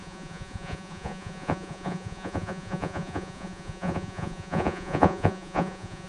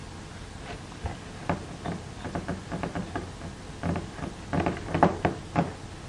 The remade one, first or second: first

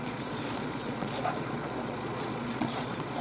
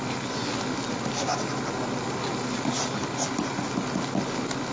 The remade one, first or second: first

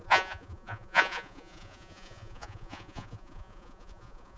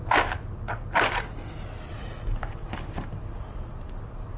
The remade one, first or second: first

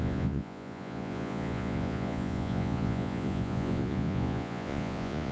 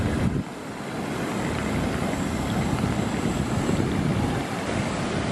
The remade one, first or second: first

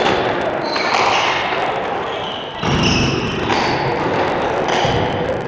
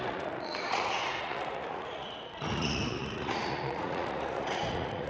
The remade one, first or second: second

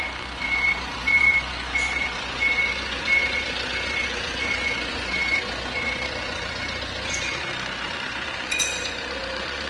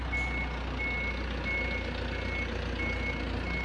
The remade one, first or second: first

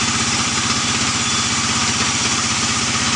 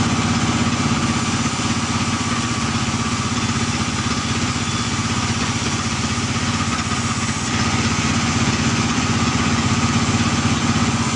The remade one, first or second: second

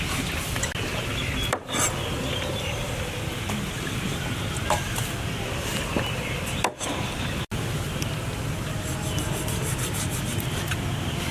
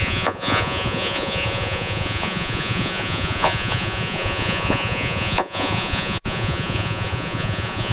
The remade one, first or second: second